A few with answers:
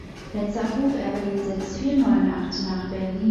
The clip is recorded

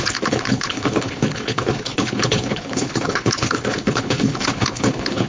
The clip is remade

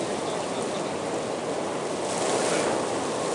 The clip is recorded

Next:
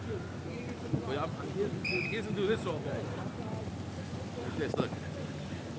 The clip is recorded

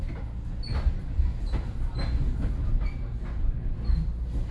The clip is recorded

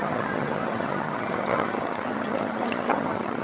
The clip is remade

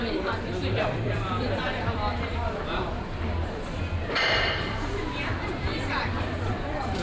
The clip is remade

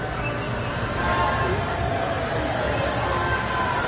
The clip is recorded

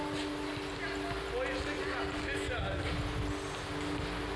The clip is recorded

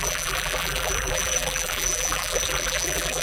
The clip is remade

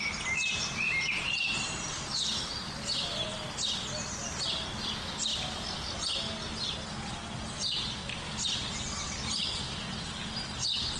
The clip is recorded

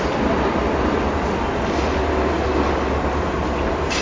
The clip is recorded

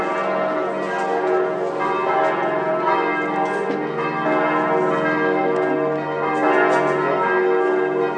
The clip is recorded